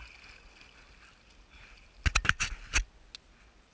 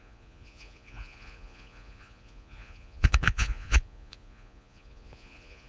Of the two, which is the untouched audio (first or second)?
first